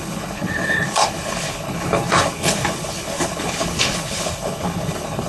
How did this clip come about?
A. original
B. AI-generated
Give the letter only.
B